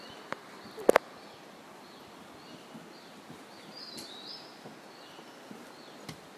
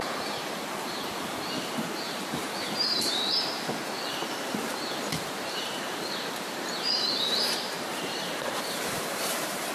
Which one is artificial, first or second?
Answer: second